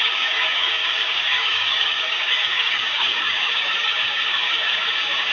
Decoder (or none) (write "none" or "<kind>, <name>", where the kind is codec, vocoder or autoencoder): codec, DAC